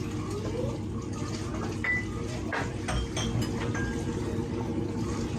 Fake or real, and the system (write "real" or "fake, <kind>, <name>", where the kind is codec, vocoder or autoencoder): real